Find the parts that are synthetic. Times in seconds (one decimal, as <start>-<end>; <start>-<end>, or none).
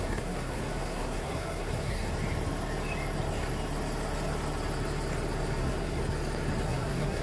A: 0.0-2.1; 5.6-6.0; 6.6-7.2